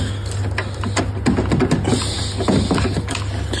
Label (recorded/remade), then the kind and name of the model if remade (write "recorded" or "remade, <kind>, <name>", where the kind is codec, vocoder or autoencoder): recorded